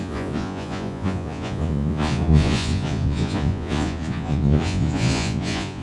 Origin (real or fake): fake